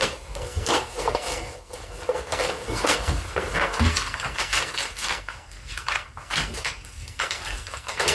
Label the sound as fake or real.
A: fake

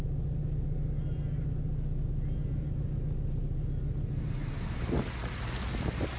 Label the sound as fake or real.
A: real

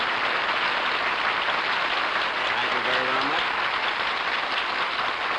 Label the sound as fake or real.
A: real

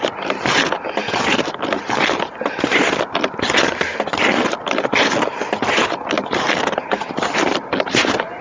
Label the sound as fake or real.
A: real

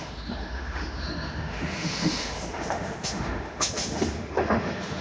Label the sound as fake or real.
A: fake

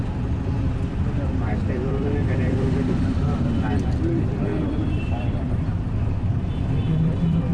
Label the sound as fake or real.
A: fake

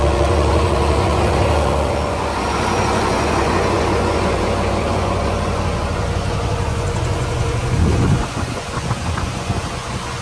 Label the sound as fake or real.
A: fake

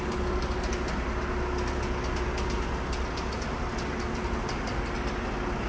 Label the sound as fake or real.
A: real